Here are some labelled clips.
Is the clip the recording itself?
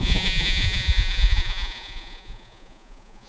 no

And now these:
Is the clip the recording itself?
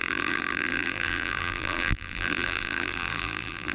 no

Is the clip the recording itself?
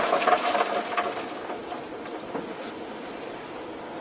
yes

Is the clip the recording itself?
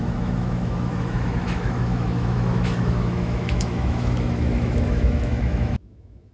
no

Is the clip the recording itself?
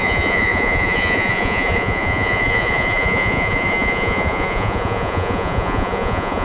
no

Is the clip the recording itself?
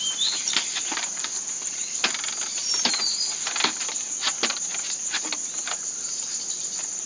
no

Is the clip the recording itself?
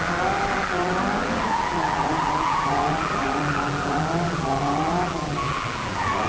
no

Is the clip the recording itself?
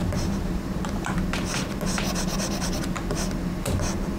yes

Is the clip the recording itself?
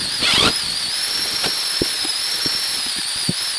yes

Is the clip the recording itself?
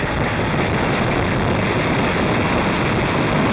yes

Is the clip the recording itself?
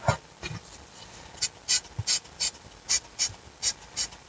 yes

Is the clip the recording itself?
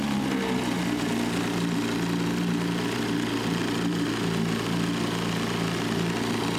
yes